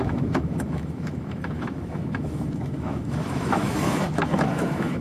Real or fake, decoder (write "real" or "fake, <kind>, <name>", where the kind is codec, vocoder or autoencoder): fake, autoencoder, DAC-VAE